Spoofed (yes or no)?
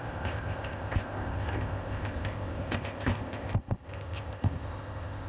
yes